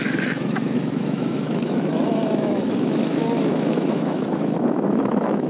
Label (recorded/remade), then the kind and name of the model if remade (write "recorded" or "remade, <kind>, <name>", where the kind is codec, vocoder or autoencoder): remade, autoencoder, DAC-VAE